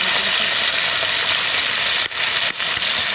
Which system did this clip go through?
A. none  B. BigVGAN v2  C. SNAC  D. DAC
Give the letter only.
A